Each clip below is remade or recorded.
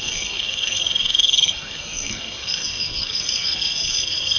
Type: remade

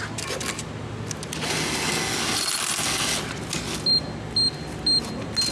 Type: recorded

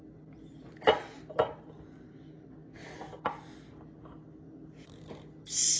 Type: recorded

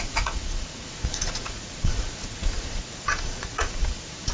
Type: remade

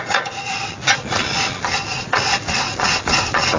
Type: remade